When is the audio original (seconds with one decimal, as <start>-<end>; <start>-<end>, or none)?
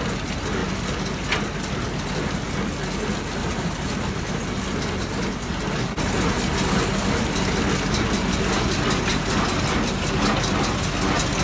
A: 0.0-3.4; 4.6-11.4